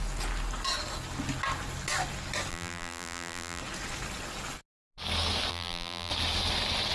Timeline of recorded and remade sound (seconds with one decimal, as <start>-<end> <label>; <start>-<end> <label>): 0.0-2.5 recorded; 2.5-3.6 remade; 3.6-5.5 recorded; 5.5-6.1 remade; 6.1-6.9 recorded